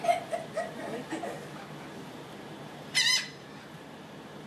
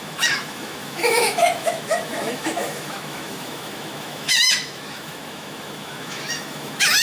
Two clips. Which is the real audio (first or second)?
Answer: first